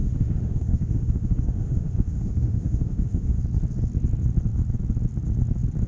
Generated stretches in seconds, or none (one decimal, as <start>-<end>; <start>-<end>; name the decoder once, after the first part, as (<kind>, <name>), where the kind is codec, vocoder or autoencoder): 0.0-3.4 (autoencoder, DAC-VAE)